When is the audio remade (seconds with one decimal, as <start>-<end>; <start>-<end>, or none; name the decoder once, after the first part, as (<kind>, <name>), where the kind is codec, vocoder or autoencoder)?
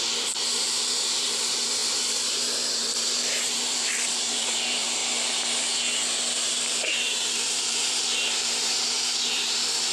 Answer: 0.0-5.0 (vocoder, BigVGAN v2); 6.4-9.9